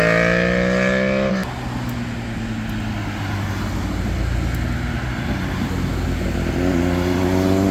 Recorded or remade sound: recorded